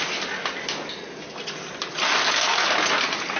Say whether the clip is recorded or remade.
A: recorded